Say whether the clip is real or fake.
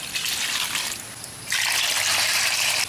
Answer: real